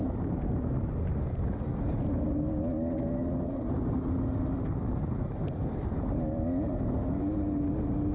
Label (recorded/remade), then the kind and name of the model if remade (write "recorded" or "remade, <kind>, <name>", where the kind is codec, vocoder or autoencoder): recorded